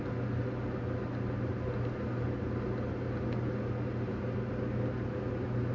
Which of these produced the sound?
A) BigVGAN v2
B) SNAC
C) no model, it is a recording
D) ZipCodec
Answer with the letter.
C